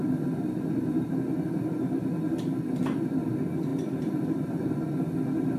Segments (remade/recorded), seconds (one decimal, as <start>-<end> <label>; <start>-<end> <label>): 0.0-3.3 remade; 3.3-3.7 recorded; 3.7-4.7 remade; 4.7-5.6 recorded